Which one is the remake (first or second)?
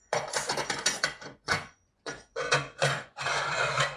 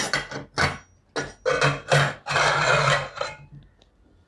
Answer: first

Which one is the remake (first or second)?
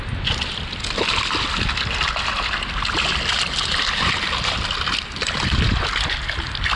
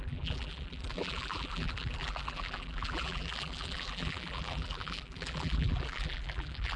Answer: second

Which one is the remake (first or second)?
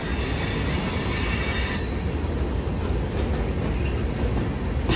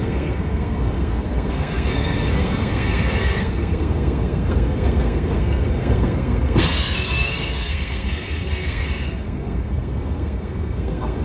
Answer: second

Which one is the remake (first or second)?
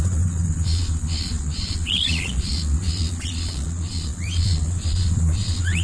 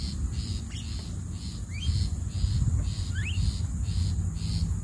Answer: first